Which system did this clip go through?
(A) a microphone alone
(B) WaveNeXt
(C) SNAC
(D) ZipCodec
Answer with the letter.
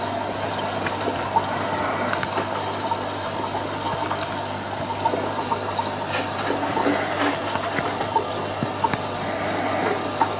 A